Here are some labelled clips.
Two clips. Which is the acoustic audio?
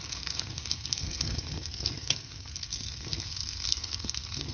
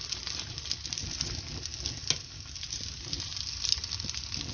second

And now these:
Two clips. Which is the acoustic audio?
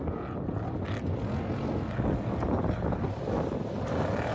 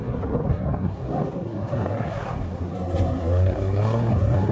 first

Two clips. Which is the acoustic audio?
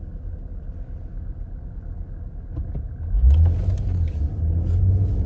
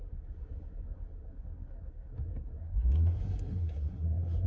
first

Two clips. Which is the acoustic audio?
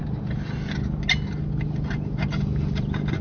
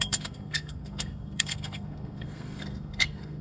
first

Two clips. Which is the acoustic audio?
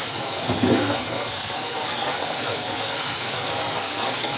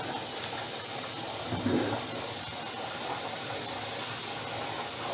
second